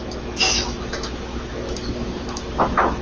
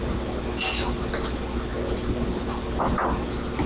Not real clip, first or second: first